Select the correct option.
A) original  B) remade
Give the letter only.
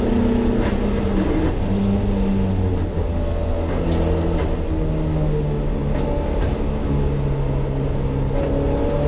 A